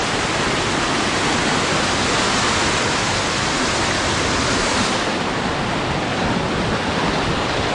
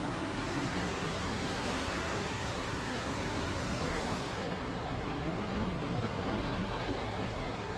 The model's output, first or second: second